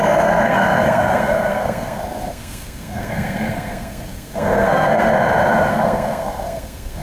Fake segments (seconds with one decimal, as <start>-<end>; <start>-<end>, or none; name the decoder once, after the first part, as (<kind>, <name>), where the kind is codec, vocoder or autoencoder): 0.0-5.1 (codec, SNAC); 5.7-7.0

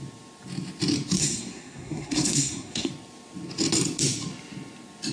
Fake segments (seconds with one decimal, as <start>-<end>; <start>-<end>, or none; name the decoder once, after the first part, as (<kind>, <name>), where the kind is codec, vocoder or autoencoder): 1.2-2.9 (codec, SNAC)

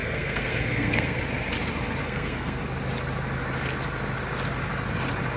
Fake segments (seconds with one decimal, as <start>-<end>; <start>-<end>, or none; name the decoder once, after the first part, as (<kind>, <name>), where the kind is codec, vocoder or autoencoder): 0.0-1.2 (codec, SNAC); 2.0-2.6

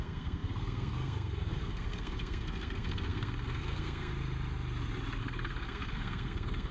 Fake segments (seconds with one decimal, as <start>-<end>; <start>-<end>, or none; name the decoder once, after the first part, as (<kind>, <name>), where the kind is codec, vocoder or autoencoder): 0.0-4.1 (codec, SNAC); 5.2-6.7

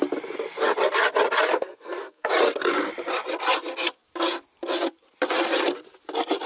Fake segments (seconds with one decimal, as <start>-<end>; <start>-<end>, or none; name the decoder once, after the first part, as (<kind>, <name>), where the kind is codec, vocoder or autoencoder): 1.5-2.3 (codec, SNAC)

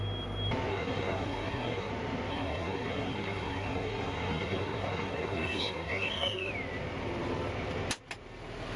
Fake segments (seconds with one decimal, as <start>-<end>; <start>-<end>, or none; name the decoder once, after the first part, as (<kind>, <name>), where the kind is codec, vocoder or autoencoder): 0.7-1.9 (codec, SNAC); 2.3-6.5

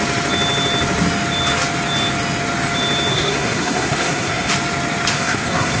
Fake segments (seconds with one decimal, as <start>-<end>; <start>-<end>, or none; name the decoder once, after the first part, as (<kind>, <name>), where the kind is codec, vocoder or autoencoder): 3.1-4.5 (codec, SNAC); 5.1-5.8

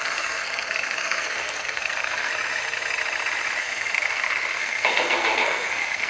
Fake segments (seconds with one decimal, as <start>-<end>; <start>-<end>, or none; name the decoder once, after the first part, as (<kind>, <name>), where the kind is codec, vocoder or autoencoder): 0.0-2.3 (codec, SNAC); 3.6-6.1